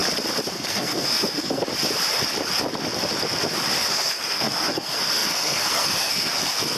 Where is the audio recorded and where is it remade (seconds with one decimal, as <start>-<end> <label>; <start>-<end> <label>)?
0.0-0.5 recorded; 0.5-1.6 remade; 1.6-3.8 recorded; 3.8-6.8 remade